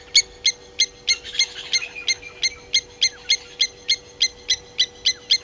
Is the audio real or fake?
real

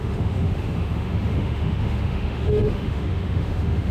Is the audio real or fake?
fake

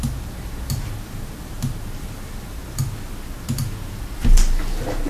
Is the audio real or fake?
real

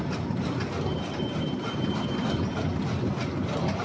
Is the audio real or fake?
real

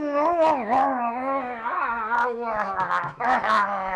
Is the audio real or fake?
fake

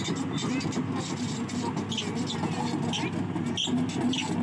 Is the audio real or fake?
real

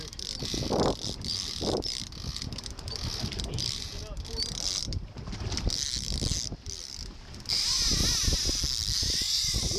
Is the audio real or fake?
real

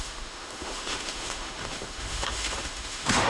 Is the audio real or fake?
fake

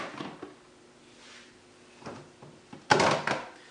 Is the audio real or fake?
real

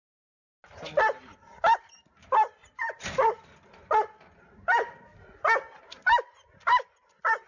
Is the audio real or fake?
real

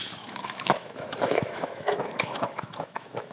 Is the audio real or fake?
fake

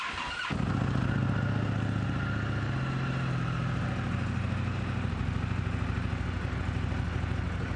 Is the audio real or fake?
real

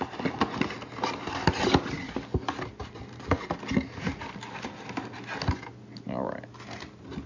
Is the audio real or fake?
real